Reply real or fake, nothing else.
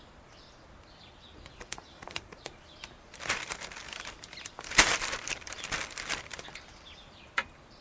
fake